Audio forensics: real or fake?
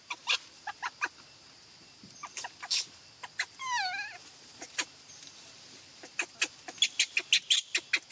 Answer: real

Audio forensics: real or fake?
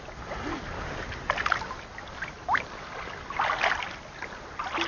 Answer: real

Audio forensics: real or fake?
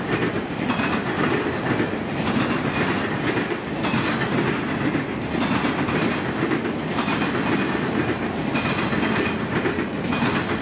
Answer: real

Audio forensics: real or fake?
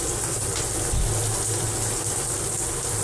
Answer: real